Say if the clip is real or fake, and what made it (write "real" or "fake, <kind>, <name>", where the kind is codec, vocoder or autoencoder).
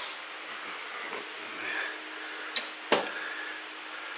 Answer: real